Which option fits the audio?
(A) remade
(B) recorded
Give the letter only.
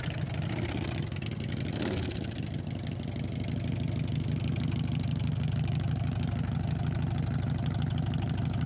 B